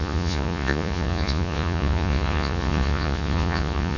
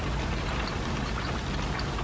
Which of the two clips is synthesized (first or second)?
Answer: first